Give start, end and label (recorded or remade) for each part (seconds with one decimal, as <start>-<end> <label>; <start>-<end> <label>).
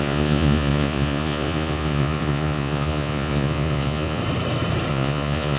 0.0-4.2 remade; 4.2-4.9 recorded; 4.9-5.6 remade